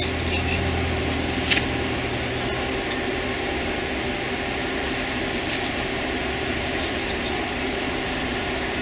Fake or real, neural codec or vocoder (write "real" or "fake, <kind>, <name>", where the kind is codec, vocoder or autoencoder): real